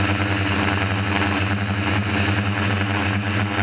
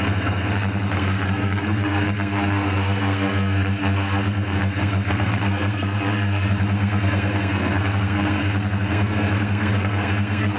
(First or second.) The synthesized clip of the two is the second